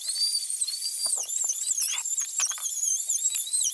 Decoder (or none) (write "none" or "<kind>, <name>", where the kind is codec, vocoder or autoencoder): vocoder, BigVGAN v2